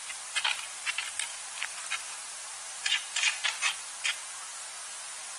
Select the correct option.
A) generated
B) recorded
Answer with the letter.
A